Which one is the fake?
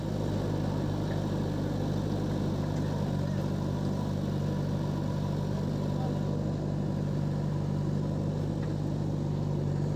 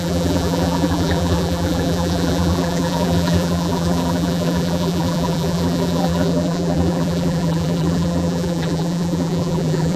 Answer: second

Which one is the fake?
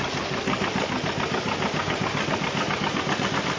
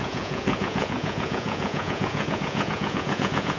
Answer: second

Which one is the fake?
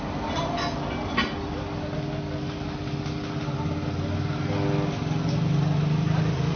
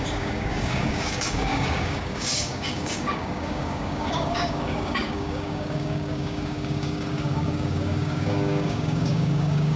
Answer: second